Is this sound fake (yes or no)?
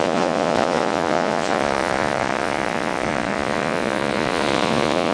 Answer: yes